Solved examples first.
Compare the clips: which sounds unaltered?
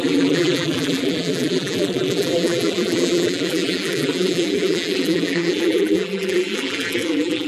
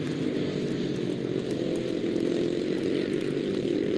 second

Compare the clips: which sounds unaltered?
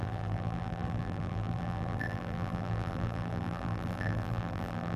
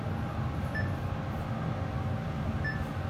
second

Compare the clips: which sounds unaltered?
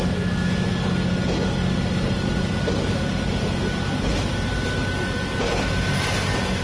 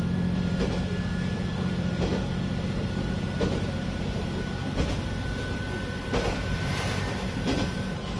first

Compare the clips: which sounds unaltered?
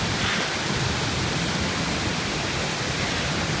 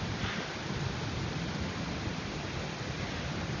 first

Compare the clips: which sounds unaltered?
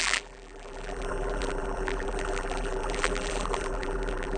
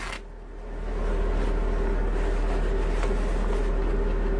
second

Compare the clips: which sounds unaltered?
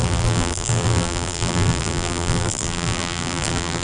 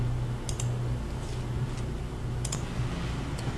second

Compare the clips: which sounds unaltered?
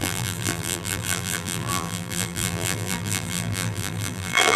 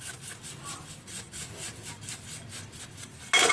second